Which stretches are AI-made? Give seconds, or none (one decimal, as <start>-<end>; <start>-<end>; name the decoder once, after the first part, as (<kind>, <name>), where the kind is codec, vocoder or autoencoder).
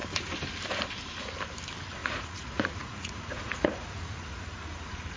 2.0-4.7 (vocoder, Vocos)